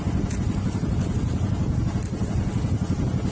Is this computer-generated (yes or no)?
no